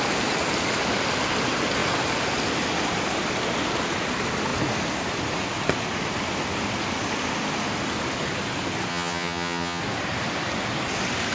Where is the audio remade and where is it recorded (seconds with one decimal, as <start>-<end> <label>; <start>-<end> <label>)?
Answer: 0.0-8.9 recorded; 8.9-9.8 remade; 9.8-11.3 recorded